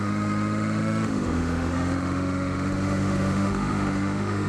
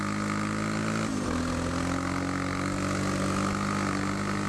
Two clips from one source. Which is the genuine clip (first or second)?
second